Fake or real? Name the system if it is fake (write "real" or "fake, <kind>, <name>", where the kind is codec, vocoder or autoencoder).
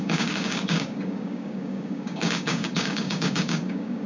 fake, codec, DAC